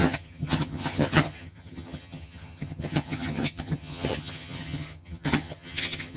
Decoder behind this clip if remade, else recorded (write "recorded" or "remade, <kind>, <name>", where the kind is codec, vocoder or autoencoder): remade, vocoder, HiFi-GAN